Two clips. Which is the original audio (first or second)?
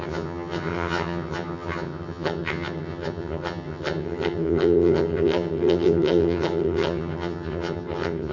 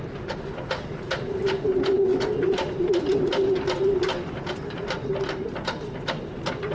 second